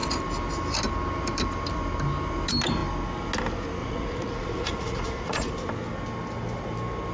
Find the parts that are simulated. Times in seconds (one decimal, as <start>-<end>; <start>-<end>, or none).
3.8-5.5